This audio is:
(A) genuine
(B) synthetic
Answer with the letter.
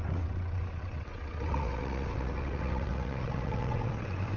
B